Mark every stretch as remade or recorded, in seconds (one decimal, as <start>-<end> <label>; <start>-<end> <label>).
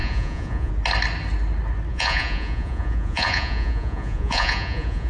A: 0.0-0.7 remade; 0.7-1.9 recorded; 1.9-5.1 remade